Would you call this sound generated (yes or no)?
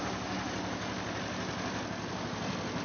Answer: no